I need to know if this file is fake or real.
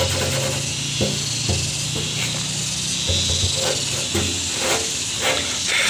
real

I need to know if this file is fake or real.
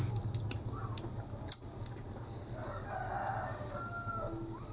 real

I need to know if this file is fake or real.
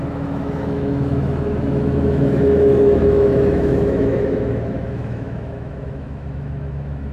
fake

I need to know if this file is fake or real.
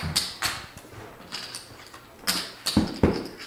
real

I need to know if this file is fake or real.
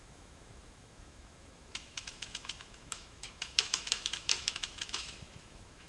fake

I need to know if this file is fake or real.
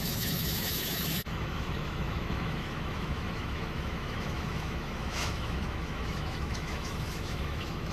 fake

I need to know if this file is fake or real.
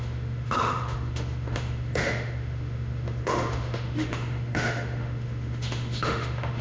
fake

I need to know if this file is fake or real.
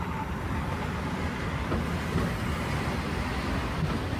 real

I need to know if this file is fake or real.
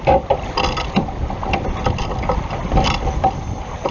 real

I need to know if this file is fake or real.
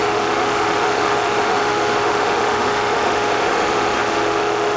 fake